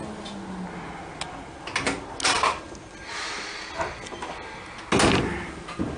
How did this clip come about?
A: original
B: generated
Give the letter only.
A